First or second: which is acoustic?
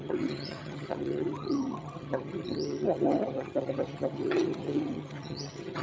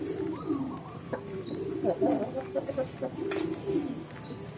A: second